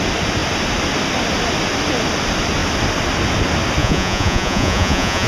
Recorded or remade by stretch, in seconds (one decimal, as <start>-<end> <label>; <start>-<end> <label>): 0.0-3.8 recorded; 3.8-5.3 remade